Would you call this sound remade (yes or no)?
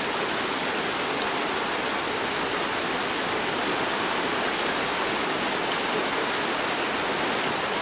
no